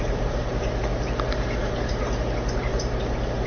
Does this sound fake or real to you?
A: fake